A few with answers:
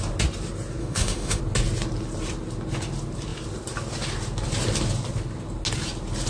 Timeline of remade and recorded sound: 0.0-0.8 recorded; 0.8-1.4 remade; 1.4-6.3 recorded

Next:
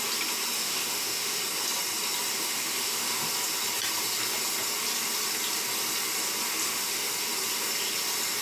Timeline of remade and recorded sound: 0.0-0.6 recorded; 0.6-1.4 remade; 1.4-2.3 recorded; 2.3-3.3 remade; 3.3-6.6 recorded; 6.6-7.1 remade; 7.1-8.4 recorded

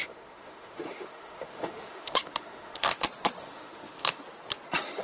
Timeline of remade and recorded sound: 0.0-3.0 remade; 3.0-3.4 recorded; 3.4-4.2 remade; 4.2-5.0 recorded

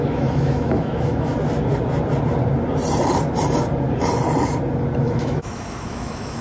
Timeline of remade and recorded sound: 0.0-1.3 remade; 1.3-5.0 recorded; 5.0-6.4 remade

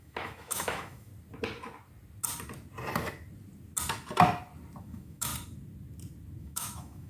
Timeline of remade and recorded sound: 0.0-1.1 remade; 1.1-4.8 recorded; 4.8-5.3 remade; 5.3-6.4 recorded; 6.4-7.1 remade